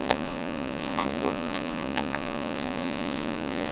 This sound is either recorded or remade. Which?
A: remade